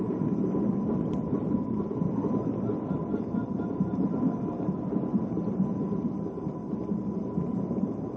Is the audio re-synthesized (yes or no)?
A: no